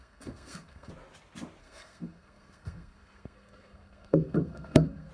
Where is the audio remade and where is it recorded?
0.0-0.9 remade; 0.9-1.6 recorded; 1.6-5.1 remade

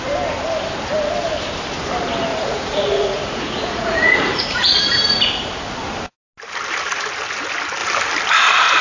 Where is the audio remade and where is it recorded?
0.0-2.3 recorded; 2.3-4.8 remade; 4.8-8.8 recorded

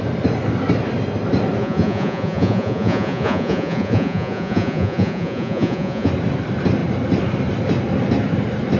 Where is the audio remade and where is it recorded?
0.0-1.6 recorded; 1.6-6.1 remade; 6.1-8.8 recorded

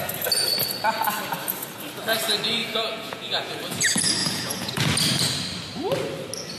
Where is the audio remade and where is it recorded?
0.0-2.6 recorded; 2.6-3.8 remade; 3.8-4.2 recorded; 4.2-4.8 remade; 4.8-6.6 recorded

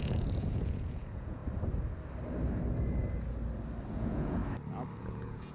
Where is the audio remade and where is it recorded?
0.0-1.4 remade; 1.4-3.9 recorded; 3.9-4.4 remade; 4.4-5.0 recorded; 5.0-5.5 remade

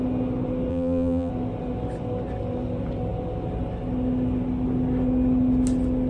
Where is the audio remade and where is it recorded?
0.0-0.7 recorded; 0.7-1.3 remade; 1.3-6.1 recorded

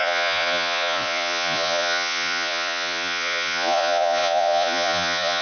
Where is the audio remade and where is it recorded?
0.0-5.4 remade